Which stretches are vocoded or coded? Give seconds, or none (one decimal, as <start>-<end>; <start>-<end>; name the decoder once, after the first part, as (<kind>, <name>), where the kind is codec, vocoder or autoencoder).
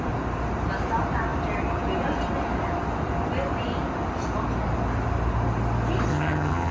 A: 6.1-6.7 (vocoder, HiFi-GAN)